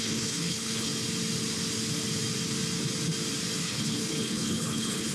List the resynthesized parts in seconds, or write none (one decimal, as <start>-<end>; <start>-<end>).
0.0-0.9; 3.6-5.1